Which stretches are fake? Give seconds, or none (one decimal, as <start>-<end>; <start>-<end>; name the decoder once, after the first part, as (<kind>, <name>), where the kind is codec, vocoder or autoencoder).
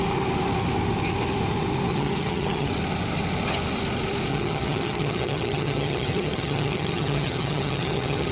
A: 1.9-2.7 (vocoder, HiFi-GAN); 4.3-8.3